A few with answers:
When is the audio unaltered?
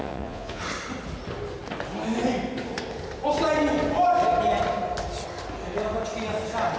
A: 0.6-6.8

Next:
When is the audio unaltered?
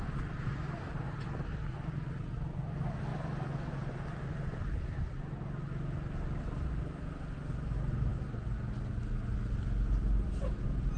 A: 0.0-11.0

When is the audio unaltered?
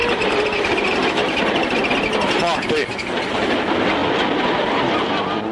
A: 0.0-5.5